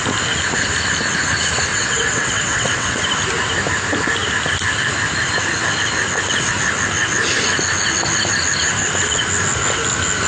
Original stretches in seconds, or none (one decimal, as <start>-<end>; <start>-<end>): 0.0-1.7; 3.0-10.3

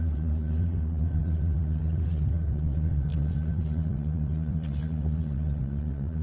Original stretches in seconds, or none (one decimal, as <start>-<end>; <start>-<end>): none

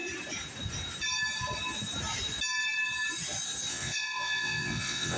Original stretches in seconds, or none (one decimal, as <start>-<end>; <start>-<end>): 0.0-3.7

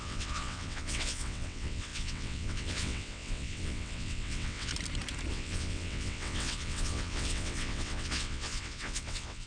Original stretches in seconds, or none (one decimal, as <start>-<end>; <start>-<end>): 4.7-5.3